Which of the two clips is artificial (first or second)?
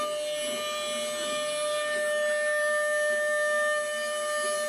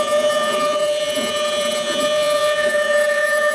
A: second